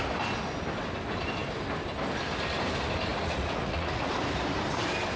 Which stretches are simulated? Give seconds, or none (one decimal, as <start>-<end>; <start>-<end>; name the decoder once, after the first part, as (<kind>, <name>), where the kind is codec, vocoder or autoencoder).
3.1-4.1 (vocoder, Vocos)